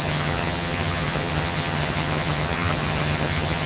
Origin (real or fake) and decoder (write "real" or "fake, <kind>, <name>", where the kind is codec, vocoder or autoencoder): fake, vocoder, HiFi-GAN